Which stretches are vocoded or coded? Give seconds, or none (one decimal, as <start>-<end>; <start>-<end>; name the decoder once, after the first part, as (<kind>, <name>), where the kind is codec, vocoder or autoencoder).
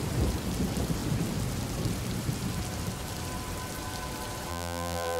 4.5-5.2 (vocoder, BigVGAN v2)